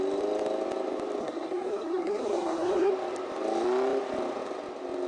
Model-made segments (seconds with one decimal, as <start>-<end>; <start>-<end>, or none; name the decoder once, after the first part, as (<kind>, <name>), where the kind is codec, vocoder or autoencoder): 1.2-2.9 (codec, SNAC)

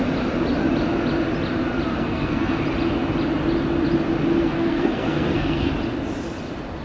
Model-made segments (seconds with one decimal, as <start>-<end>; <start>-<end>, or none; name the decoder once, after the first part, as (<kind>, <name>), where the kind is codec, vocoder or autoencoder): 1.9-2.6 (codec, SNAC); 4.4-5.7

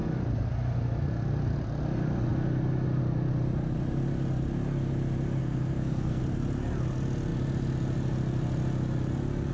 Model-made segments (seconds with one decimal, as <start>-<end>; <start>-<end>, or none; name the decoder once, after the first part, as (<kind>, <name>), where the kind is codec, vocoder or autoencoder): 5.4-6.2 (codec, SNAC)

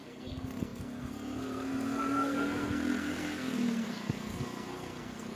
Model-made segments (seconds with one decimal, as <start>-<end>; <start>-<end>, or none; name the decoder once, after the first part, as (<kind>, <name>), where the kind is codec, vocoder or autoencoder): 0.0-5.4 (codec, SNAC)

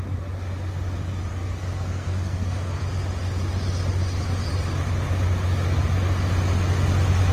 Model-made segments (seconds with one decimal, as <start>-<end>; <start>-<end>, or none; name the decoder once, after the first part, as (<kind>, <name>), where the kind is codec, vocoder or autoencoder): 1.3-2.8 (codec, SNAC)